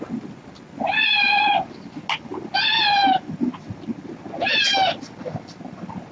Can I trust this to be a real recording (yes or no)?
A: yes